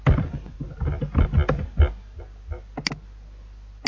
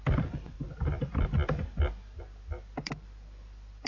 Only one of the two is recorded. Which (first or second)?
first